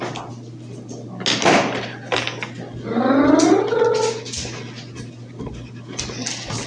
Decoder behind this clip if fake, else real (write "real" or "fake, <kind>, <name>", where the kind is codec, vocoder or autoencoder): real